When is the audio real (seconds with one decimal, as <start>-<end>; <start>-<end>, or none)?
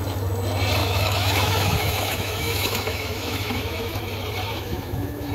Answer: 0.0-0.8; 4.0-4.5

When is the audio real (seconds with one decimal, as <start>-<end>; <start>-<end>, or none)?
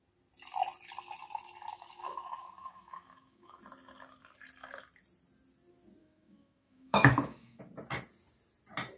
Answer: 0.0-1.7; 3.6-6.0; 7.6-9.0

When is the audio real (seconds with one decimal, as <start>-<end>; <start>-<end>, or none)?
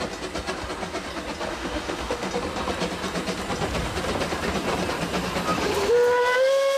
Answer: 0.0-1.5; 2.3-6.8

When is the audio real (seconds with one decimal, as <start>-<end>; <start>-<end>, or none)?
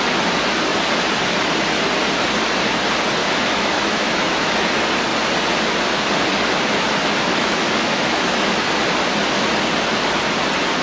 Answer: 0.0-3.2; 4.6-7.3; 8.7-10.8